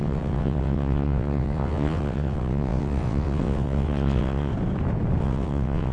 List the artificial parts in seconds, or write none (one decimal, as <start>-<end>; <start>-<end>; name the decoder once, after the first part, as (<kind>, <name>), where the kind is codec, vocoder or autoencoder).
0.0-4.5 (vocoder, WaveNeXt); 5.2-5.9